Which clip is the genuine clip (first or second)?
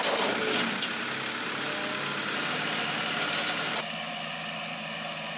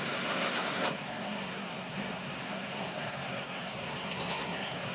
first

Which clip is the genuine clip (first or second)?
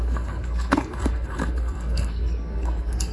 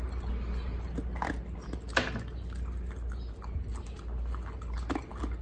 second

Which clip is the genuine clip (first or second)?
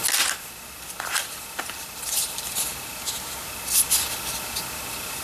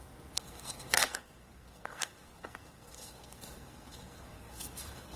first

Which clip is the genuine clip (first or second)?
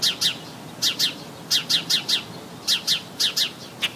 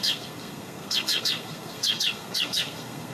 first